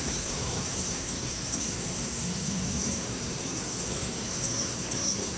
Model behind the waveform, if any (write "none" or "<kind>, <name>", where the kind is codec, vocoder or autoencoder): codec, SNAC